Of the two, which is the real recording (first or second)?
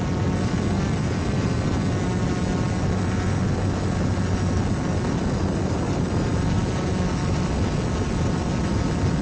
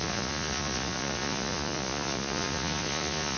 first